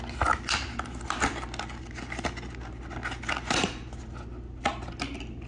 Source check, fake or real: real